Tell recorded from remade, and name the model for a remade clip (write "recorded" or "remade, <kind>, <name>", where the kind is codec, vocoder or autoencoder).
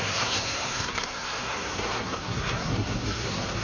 remade, codec, SNAC